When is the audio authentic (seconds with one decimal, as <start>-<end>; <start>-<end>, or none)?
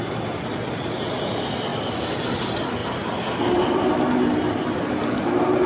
0.0-2.8; 5.2-5.7